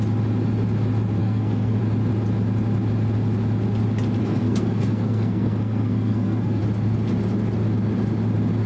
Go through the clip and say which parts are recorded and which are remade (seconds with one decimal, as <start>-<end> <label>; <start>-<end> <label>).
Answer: 0.0-1.2 recorded; 1.2-1.8 remade; 1.8-4.2 recorded; 4.2-6.6 remade; 6.6-8.7 recorded